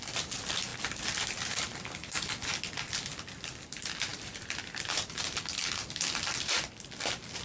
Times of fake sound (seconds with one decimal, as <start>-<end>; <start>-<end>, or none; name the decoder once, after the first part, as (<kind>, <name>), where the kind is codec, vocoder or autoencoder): 4.1-5.4 (vocoder, BigVGAN v2)